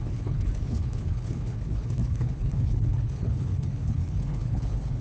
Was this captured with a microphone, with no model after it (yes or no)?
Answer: no